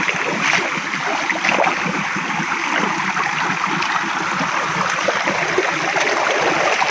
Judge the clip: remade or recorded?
recorded